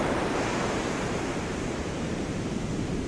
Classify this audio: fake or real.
fake